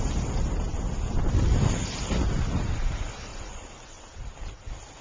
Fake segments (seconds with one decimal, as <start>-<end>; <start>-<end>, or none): 3.3-4.0